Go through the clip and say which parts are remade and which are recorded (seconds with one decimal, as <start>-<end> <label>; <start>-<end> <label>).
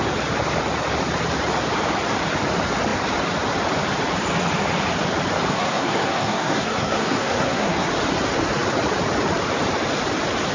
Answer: 0.0-5.5 recorded; 5.5-7.9 remade; 7.9-10.5 recorded